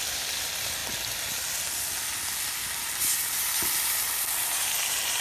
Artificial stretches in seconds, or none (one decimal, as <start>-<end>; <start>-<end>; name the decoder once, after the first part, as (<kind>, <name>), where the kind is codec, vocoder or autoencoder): none